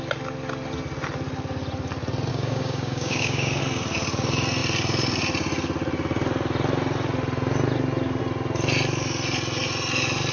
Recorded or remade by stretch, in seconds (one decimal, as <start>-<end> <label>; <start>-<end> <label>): 0.0-2.3 recorded; 2.3-3.6 remade; 3.6-10.3 recorded